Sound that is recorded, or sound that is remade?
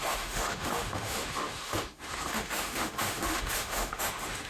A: remade